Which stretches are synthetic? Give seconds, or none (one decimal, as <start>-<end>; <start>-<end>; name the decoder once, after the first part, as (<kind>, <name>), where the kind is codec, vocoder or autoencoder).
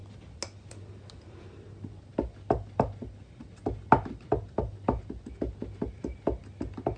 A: none